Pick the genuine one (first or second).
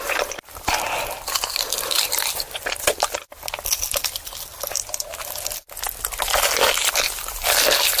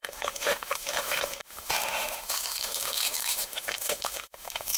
first